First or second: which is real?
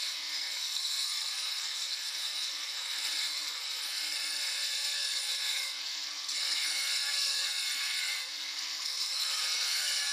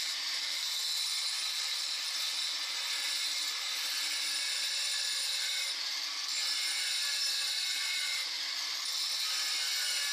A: second